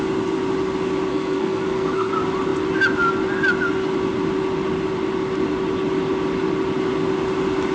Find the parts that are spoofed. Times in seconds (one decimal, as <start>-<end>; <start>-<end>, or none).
1.1-2.1